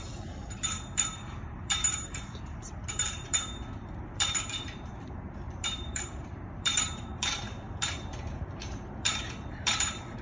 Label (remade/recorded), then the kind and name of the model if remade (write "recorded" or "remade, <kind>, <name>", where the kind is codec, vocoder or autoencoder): remade, vocoder, BigVGAN v2